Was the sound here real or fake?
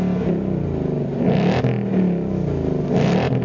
real